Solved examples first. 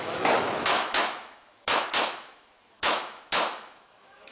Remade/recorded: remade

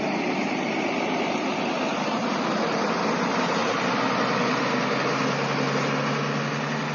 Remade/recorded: recorded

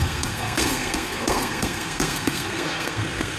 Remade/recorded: remade